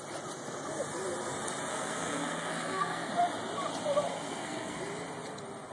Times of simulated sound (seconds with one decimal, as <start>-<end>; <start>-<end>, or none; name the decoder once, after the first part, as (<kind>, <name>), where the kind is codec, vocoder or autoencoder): 1.7-3.1 (codec, SNAC); 4.1-4.8